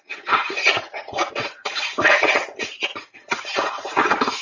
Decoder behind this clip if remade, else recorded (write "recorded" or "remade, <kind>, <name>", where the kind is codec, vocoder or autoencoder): remade, vocoder, Vocos